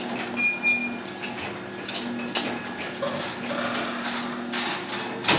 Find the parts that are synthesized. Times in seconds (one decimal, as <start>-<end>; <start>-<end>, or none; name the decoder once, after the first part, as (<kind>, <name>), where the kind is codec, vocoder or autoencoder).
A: none